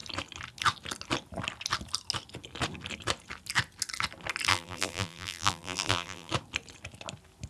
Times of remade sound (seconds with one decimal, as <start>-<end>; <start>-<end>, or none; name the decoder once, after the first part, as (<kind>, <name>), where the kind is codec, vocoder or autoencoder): 4.5-6.3 (vocoder, BigVGAN v2)